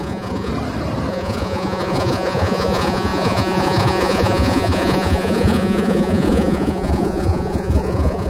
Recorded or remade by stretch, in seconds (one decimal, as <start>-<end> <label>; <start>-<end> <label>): 0.0-0.5 remade; 0.5-1.1 recorded; 1.1-8.3 remade